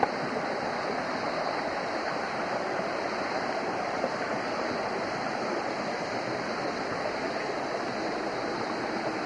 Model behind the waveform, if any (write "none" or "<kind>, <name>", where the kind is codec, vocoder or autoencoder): none